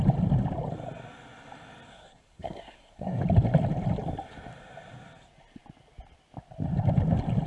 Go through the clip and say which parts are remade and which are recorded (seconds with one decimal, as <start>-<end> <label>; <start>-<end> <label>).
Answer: 0.0-1.9 recorded; 1.9-3.2 remade; 3.2-7.5 recorded